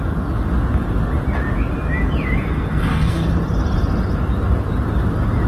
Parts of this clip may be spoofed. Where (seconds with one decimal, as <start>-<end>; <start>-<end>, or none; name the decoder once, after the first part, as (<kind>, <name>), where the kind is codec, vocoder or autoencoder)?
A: 2.5-3.3 (codec, SNAC)